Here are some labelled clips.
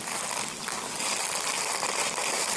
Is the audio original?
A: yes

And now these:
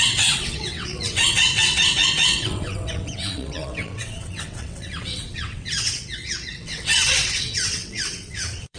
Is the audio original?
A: no